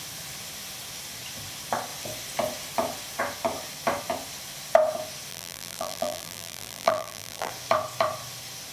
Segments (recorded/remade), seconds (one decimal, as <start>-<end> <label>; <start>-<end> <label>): 0.0-5.3 recorded; 5.3-7.5 remade; 7.5-8.7 recorded